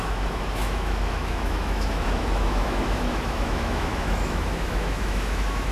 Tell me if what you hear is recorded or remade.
remade